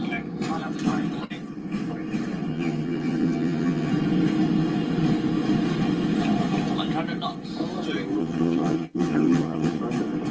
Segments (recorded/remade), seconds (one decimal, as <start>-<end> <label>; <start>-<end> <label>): 0.0-2.5 recorded; 2.5-3.9 remade; 3.9-8.2 recorded; 8.2-9.8 remade; 9.8-10.3 recorded

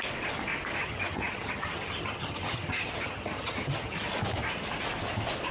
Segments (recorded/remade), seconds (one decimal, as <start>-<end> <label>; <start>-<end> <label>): 0.0-0.8 recorded; 0.8-4.1 remade; 4.1-5.5 recorded